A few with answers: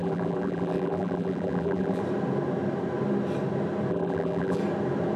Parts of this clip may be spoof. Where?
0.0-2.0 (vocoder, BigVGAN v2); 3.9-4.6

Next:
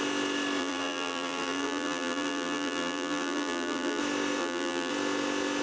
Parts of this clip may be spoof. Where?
0.6-4.0 (vocoder, BigVGAN v2); 4.4-4.9

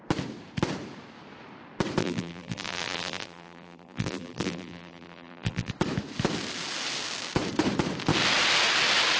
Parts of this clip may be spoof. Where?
2.0-5.7 (vocoder, BigVGAN v2)